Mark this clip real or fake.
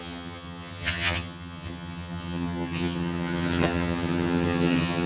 fake